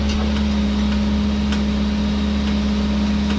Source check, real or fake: real